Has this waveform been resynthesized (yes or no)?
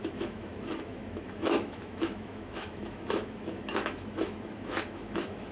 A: yes